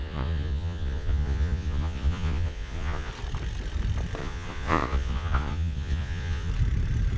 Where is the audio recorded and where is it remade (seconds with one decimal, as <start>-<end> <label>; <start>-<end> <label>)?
0.0-3.1 remade; 3.1-4.2 recorded; 4.2-6.5 remade; 6.5-7.2 recorded